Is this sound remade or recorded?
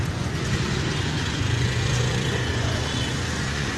remade